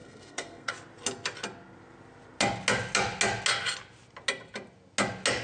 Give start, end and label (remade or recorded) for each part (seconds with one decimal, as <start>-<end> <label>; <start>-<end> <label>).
0.0-0.7 remade; 0.7-5.4 recorded